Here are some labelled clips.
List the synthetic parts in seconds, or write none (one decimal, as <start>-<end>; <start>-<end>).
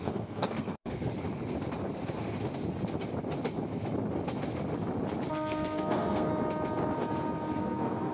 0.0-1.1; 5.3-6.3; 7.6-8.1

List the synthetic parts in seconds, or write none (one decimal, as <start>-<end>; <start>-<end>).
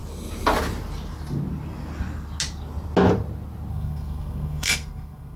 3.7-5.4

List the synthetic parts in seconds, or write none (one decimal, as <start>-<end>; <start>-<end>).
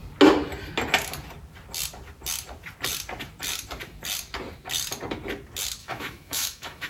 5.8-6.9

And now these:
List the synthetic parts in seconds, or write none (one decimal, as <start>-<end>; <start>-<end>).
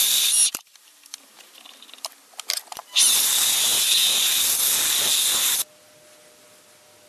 0.0-1.3; 2.8-3.7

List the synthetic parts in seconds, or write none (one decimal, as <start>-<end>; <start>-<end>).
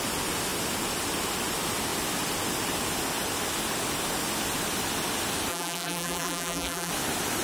5.5-6.9